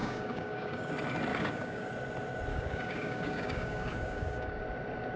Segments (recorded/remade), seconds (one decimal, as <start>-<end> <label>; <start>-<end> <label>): 0.0-0.9 remade; 0.9-1.3 recorded; 1.3-1.9 remade; 1.9-2.5 recorded; 2.5-4.6 remade; 4.6-5.2 recorded